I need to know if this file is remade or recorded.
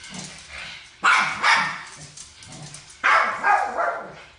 recorded